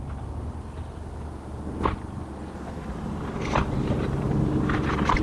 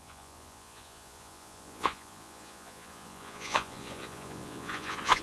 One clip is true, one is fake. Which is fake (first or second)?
second